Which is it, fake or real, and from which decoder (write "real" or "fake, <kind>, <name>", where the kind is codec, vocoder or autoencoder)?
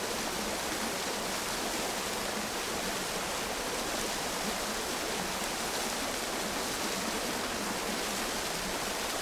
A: real